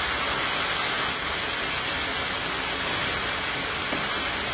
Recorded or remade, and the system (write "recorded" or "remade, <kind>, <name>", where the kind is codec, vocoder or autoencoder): recorded